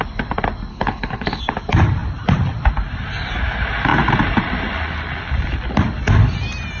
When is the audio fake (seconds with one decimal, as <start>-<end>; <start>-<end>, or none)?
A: 0.7-1.4